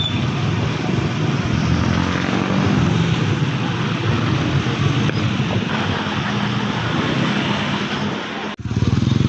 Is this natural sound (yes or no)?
yes